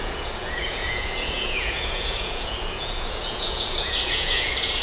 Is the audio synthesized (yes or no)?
yes